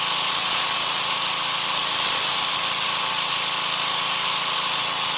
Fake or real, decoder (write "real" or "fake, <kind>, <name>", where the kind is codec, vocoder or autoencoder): real